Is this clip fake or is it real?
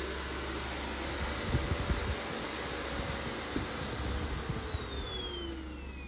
real